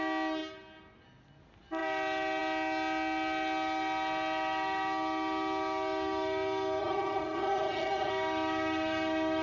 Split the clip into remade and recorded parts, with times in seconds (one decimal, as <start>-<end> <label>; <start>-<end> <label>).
0.0-6.8 recorded; 6.8-8.1 remade; 8.1-9.4 recorded